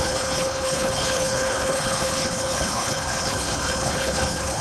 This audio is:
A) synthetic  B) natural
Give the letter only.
A